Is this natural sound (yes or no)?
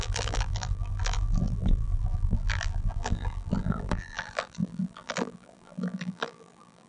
no